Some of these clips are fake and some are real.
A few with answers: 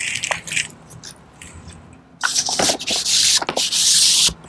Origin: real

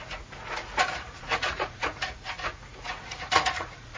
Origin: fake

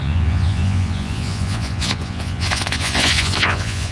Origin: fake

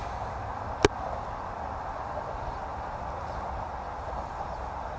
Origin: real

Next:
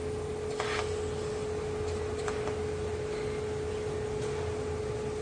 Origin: real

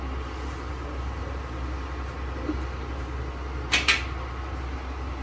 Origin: real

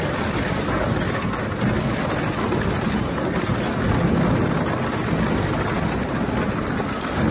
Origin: real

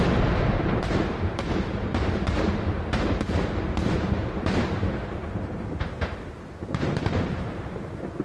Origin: fake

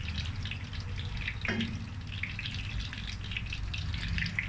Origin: real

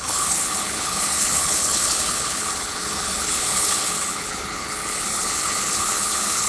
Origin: fake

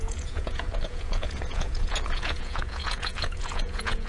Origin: fake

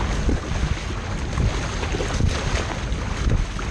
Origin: real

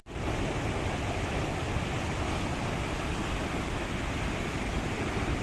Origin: real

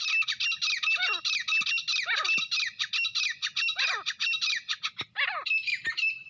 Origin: real